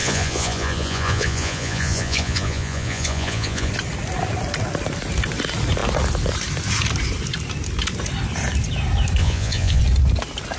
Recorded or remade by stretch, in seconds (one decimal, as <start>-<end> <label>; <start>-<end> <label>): 0.0-3.7 remade; 3.7-9.2 recorded; 9.2-9.8 remade; 9.8-10.6 recorded